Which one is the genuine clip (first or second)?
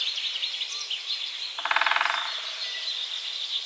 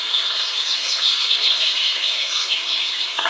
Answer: first